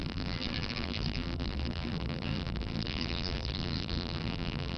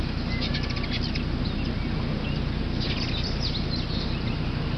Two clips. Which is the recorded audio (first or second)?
second